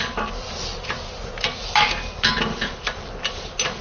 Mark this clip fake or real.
real